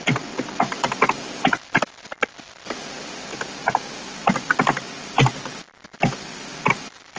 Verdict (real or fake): real